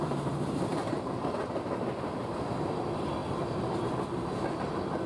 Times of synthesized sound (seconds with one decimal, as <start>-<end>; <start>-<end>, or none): none